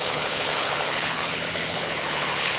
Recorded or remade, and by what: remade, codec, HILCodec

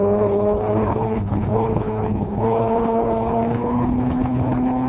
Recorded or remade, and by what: remade, codec, HILCodec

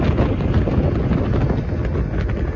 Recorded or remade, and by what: recorded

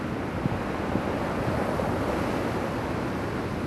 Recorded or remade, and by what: recorded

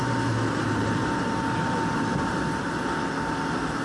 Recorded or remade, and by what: recorded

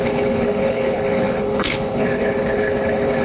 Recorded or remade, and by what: remade, codec, HILCodec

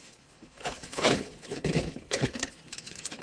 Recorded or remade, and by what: remade, codec, HILCodec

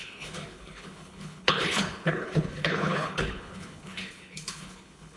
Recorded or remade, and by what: remade, codec, HILCodec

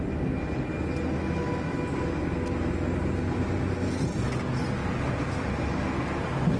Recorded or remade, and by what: recorded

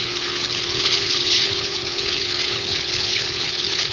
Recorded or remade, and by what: remade, codec, HILCodec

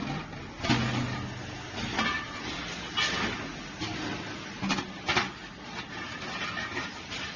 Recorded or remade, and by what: recorded